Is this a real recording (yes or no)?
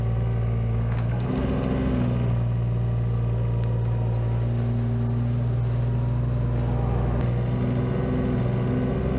yes